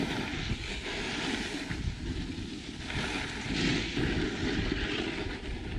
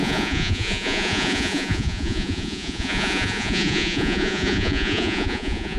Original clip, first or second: first